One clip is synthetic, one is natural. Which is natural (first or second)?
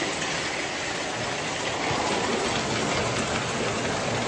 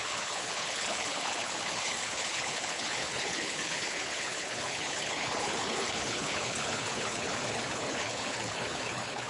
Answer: first